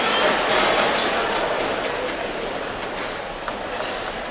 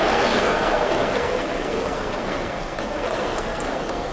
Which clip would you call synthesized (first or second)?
second